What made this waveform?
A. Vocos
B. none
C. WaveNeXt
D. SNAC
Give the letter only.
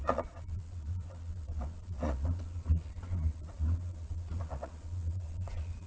A